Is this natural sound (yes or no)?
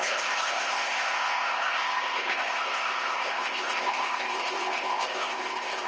no